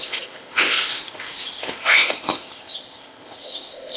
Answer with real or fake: fake